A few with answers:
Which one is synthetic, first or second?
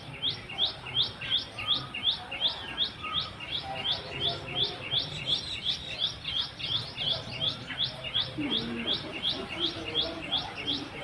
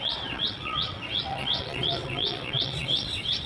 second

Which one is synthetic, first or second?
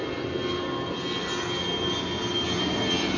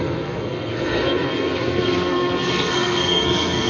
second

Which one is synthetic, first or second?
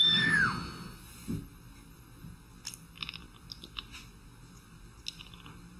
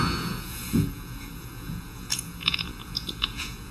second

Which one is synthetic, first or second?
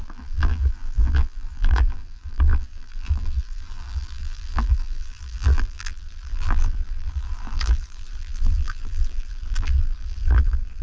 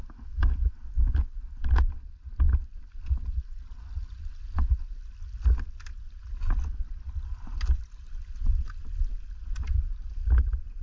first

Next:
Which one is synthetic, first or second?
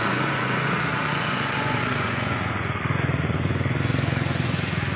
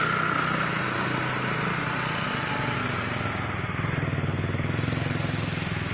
first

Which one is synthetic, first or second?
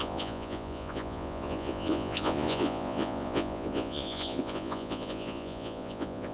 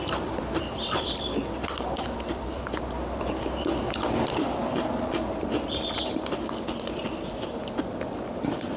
first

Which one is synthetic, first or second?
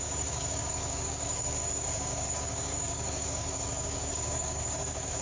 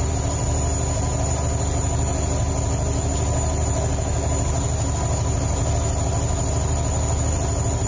first